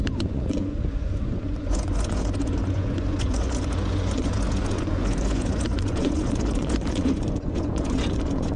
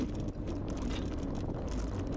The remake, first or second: first